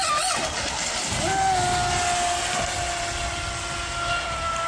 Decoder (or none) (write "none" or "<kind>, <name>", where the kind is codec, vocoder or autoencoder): none